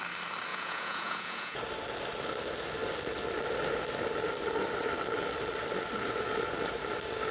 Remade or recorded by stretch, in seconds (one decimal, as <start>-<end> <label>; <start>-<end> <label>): 0.0-0.5 recorded; 0.5-1.6 remade; 1.6-7.3 recorded